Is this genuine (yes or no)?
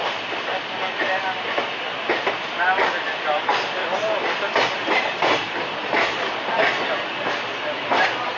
yes